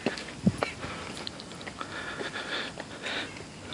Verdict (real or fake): real